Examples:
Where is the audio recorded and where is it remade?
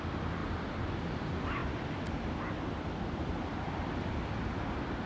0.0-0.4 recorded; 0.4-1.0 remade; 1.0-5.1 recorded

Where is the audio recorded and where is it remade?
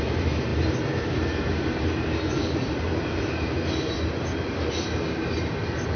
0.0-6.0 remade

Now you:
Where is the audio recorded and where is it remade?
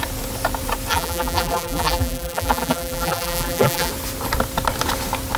0.0-0.9 recorded; 0.9-3.9 remade; 3.9-5.4 recorded